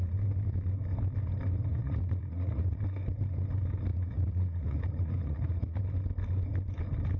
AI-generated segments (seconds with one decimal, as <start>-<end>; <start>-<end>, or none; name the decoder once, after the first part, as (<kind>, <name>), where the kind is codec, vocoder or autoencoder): 1.7-2.8 (vocoder, Vocos); 3.9-5.8